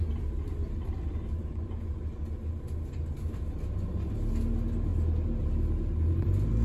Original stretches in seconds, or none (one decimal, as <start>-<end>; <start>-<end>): 0.0-6.6